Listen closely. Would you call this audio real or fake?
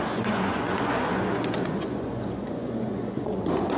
fake